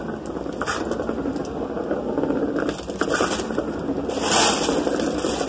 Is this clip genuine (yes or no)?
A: yes